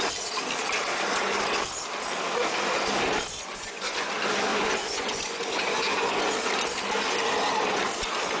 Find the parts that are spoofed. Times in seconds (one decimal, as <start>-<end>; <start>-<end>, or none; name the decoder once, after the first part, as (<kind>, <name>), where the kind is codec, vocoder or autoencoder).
3.3-4.1 (vocoder, Vocos); 4.5-6.2